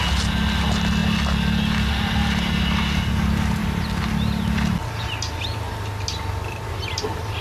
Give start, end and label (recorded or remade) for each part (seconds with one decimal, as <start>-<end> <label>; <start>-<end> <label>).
0.0-7.4 recorded